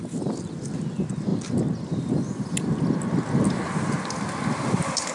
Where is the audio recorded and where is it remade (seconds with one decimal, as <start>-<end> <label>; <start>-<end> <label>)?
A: 0.0-5.1 recorded